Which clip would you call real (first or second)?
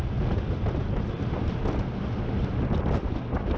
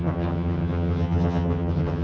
first